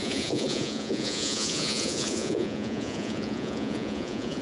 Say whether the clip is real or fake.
fake